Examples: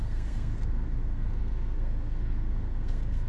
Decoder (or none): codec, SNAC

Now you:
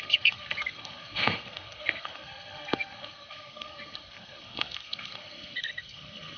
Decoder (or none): codec, SNAC